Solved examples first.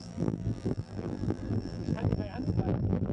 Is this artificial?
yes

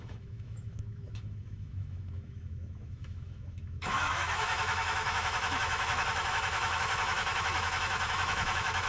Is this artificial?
yes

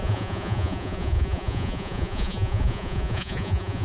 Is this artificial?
yes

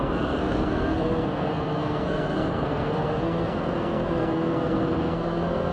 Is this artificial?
yes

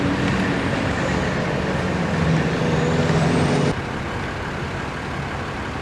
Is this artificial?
no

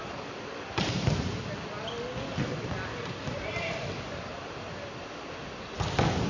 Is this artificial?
no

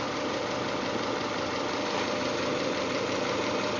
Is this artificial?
no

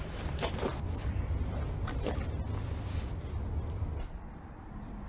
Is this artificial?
no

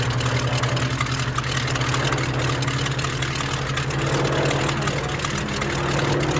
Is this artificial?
no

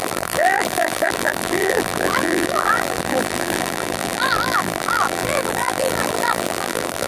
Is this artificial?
yes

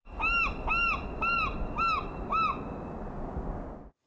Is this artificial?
no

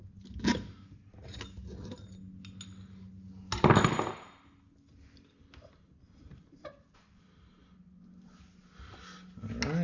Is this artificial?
no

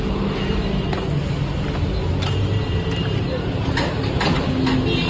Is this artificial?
no